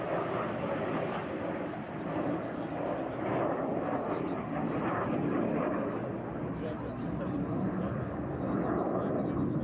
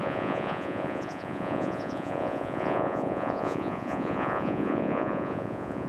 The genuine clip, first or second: first